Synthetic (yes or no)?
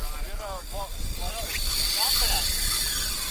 no